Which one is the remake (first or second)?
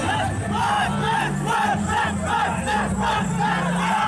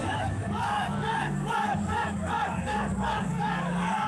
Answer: second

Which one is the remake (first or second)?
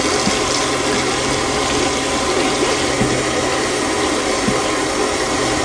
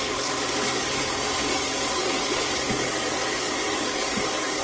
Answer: second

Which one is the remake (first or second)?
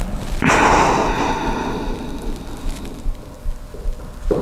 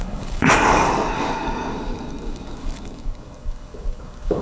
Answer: second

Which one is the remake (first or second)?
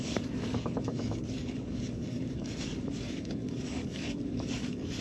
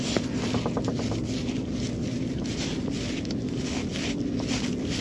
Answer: first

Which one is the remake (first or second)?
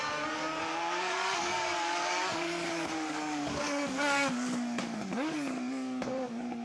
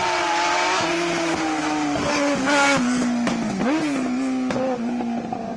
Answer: first